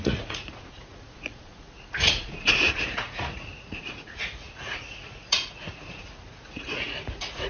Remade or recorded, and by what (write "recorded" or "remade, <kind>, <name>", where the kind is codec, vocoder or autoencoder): remade, vocoder, Vocos